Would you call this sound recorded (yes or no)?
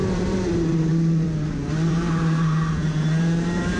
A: no